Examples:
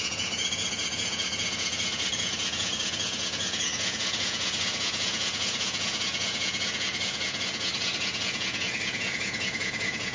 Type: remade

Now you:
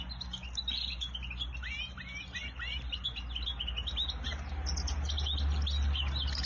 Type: recorded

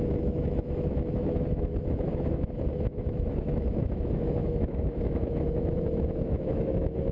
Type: remade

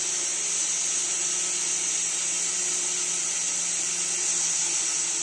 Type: recorded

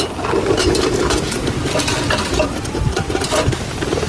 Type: recorded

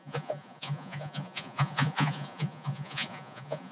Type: remade